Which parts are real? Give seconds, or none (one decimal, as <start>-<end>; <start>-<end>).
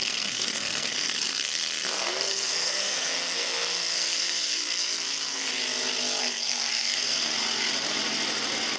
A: 5.5-6.2; 7.3-8.8